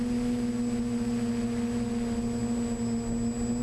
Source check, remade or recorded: recorded